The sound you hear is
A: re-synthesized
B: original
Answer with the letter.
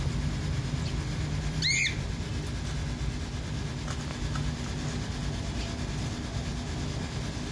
B